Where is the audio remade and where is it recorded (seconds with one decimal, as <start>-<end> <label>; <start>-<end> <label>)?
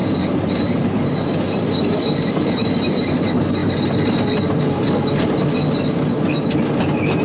0.0-3.1 remade; 3.1-7.2 recorded